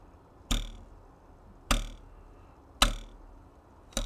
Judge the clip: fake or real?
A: real